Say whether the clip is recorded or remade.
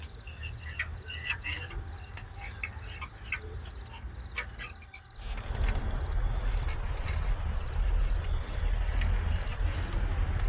recorded